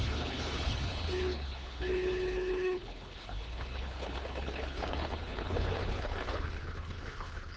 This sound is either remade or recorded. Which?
remade